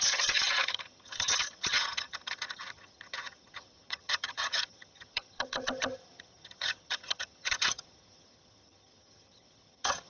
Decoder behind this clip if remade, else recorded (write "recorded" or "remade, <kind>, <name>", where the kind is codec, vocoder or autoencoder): remade, vocoder, HiFi-GAN